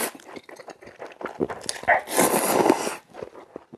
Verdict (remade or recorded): recorded